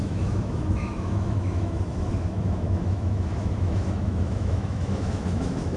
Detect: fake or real fake